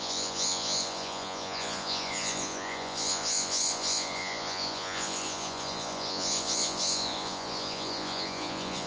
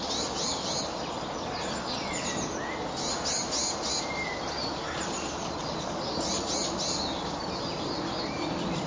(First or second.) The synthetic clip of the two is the first